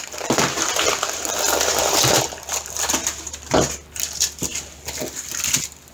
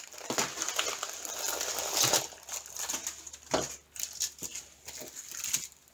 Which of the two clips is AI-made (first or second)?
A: first